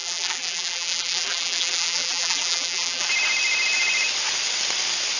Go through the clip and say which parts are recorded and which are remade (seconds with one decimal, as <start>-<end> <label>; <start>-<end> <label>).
0.0-3.1 remade; 3.1-5.2 recorded